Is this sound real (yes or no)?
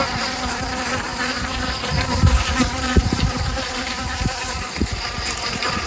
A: no